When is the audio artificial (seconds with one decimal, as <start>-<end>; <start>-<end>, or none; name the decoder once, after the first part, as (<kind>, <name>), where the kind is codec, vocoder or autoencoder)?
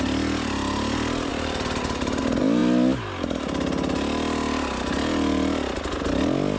1.3-2.2 (vocoder, BigVGAN v2)